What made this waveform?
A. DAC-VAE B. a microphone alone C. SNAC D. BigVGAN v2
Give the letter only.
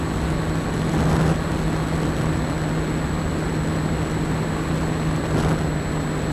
B